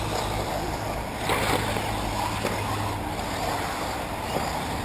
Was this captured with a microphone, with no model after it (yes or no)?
yes